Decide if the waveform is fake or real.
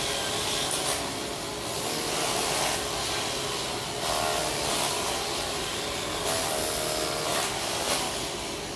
real